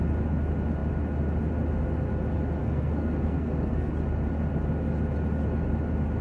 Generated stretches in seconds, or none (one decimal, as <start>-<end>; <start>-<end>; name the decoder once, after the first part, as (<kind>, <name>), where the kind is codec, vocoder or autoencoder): 2.6-3.9 (codec, SNAC)